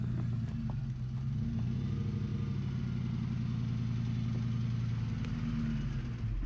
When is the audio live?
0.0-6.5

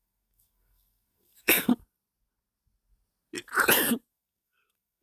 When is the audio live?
1.7-4.1

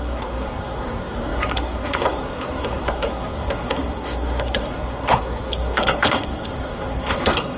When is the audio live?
none

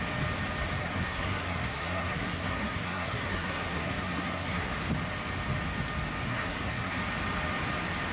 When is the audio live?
0.0-0.8; 4.7-6.3; 7.0-8.1

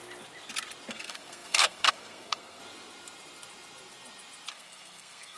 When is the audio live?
0.0-0.9; 2.6-4.5

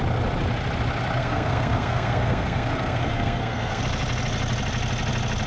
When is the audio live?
0.0-1.2; 3.8-5.5

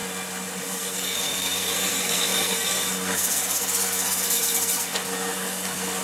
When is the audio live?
0.0-0.6